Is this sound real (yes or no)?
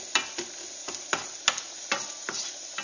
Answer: yes